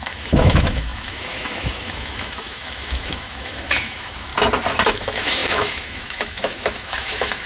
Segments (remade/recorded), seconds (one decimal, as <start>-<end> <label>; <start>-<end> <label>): 0.0-4.3 remade; 4.3-4.9 recorded; 4.9-7.5 remade